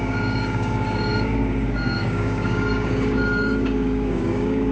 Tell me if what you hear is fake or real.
fake